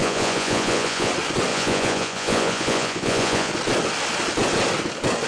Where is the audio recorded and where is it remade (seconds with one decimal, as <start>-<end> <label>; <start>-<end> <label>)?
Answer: 0.0-1.1 remade; 1.1-1.5 recorded; 1.5-3.5 remade; 3.5-5.3 recorded